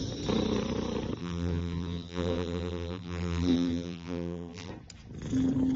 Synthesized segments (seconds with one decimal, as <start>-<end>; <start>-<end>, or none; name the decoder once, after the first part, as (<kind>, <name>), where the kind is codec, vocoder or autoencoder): 1.2-4.7 (vocoder, BigVGAN v2)